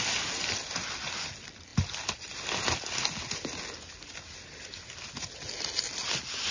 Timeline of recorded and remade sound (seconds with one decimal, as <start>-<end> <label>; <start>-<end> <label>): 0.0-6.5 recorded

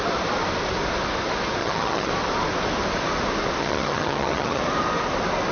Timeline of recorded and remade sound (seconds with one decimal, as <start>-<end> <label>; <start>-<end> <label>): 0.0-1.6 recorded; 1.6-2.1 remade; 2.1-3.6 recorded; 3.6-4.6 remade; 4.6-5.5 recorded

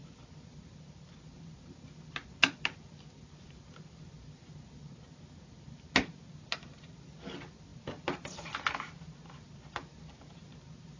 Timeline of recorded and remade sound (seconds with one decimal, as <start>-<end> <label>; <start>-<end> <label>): 0.0-11.0 recorded